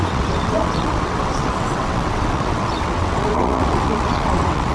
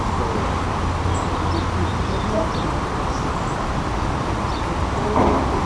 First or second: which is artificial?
first